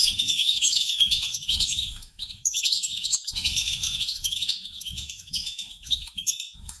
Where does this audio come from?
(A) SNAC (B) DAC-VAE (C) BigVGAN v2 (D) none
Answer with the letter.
B